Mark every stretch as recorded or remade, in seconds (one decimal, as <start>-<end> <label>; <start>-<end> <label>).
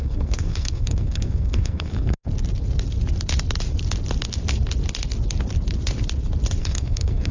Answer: 0.0-2.3 remade; 2.3-6.6 recorded; 6.6-7.3 remade